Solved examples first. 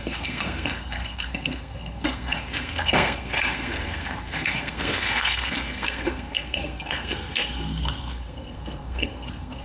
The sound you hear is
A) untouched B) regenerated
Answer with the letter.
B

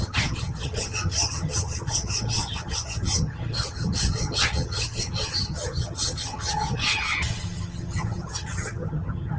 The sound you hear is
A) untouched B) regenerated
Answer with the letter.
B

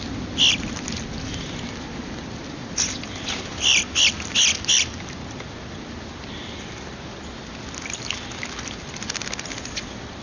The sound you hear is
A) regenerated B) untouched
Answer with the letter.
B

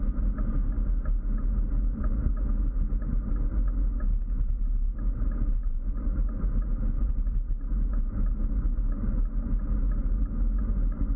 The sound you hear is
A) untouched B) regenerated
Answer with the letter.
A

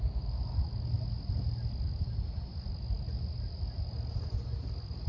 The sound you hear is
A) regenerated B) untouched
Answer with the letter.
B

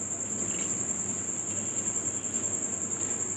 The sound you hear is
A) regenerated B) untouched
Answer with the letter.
B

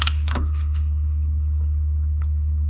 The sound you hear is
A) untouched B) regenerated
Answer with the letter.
B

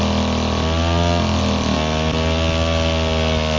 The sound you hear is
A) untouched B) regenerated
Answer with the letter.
A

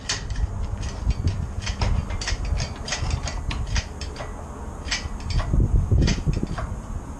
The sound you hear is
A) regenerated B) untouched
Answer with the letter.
B